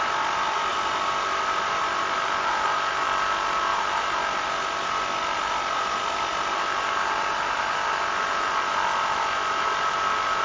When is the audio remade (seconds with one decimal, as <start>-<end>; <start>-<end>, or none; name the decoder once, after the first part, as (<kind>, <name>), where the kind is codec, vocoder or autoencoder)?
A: none

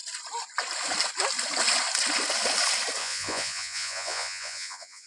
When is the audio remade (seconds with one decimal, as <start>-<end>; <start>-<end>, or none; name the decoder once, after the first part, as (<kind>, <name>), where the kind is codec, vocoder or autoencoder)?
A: 3.0-5.1 (vocoder, Vocos)

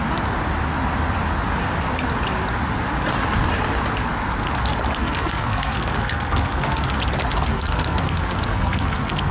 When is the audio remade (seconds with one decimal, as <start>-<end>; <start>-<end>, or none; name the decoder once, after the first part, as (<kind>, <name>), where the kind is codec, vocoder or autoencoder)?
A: 5.0-7.0 (codec, SNAC); 7.5-9.3

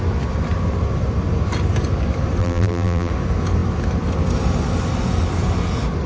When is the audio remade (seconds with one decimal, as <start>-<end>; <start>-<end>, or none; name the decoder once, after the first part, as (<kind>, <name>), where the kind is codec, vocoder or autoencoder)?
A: 2.4-3.1 (vocoder, BigVGAN v2)